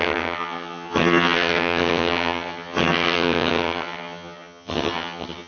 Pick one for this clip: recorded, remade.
remade